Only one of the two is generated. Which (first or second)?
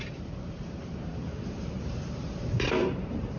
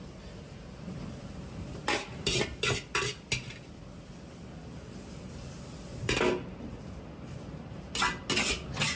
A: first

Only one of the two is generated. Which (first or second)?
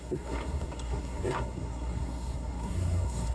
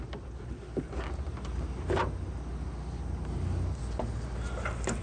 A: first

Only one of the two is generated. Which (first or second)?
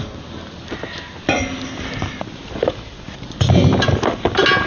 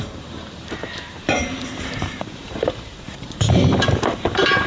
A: second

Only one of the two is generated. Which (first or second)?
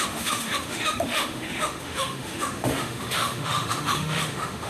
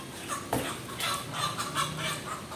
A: first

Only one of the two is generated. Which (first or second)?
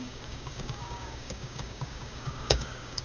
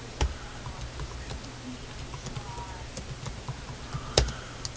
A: first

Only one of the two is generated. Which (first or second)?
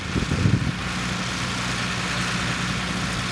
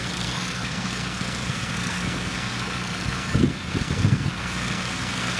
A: second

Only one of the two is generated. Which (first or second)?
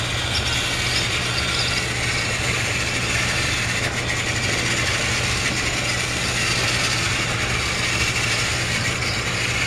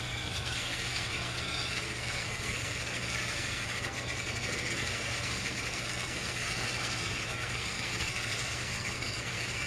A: second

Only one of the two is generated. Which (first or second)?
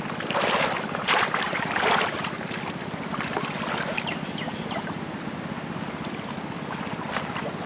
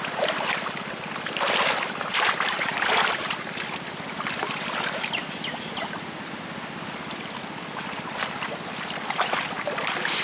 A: second